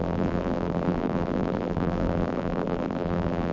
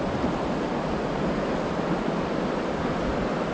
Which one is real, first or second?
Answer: second